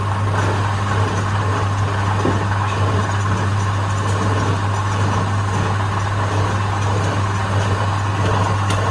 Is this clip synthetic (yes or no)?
no